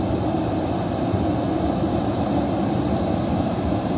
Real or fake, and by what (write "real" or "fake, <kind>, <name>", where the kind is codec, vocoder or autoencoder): real